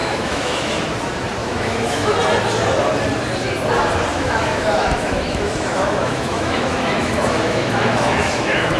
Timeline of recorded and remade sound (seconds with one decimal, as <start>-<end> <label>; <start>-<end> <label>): 0.0-0.7 remade; 0.7-1.4 recorded; 1.4-2.1 remade; 2.1-4.1 recorded; 4.1-8.8 remade